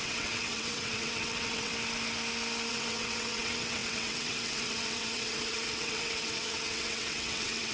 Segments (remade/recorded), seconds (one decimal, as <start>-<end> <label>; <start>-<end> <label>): 0.0-1.7 remade; 1.7-2.7 recorded; 2.7-7.7 remade